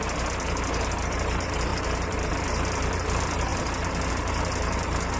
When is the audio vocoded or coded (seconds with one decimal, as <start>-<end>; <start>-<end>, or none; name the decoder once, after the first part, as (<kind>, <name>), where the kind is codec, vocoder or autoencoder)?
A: none